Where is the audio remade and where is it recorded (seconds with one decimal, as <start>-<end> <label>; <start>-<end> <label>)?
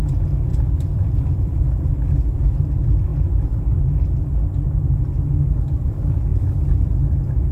0.0-0.5 recorded; 0.5-1.9 remade; 1.9-3.1 recorded; 3.1-4.4 remade; 4.4-6.3 recorded; 6.3-7.5 remade